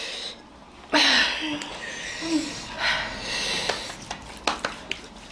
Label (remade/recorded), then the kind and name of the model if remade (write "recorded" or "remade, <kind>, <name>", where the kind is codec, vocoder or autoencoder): recorded